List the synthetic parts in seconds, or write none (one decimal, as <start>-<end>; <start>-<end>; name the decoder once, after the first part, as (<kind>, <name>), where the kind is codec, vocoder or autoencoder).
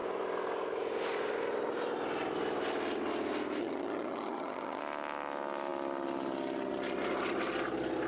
3.6-4.8 (vocoder, HiFi-GAN)